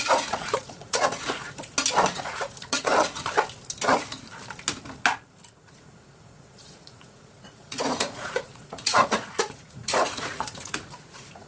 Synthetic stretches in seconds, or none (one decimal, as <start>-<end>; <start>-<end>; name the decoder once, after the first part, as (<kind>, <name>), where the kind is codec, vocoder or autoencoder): 0.0-1.6 (vocoder, Vocos); 2.1-2.9; 5.5-11.5

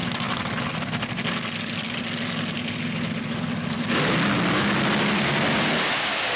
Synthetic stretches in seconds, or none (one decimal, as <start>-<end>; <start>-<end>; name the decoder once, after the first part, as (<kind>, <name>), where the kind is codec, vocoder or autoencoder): none

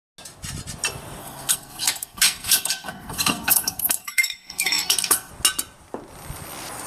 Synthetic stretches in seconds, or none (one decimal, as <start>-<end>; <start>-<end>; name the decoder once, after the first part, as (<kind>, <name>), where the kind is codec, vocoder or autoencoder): 1.2-5.3 (codec, SNAC)

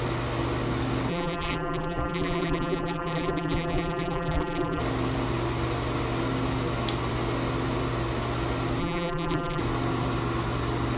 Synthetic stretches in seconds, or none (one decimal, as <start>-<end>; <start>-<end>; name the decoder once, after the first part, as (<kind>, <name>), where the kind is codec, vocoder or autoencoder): 1.1-4.8 (vocoder, BigVGAN v2); 8.8-9.6

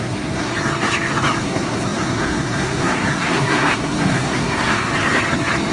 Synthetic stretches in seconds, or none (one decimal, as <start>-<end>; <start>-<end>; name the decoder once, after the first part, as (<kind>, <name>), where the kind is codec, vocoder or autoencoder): 0.0-0.5 (codec, SNAC); 1.4-4.9

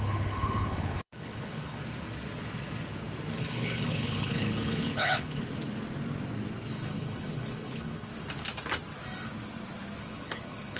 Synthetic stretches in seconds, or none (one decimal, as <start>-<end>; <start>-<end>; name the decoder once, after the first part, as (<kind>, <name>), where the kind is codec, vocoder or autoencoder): 0.0-1.8 (codec, HILCodec); 3.4-5.4; 6.7-8.1; 10.0-10.8